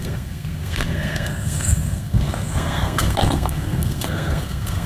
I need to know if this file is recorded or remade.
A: remade